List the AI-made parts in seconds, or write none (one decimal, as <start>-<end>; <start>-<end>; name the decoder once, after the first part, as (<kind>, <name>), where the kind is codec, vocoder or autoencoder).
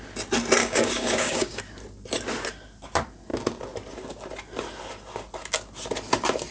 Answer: 0.6-1.6 (codec, DAC)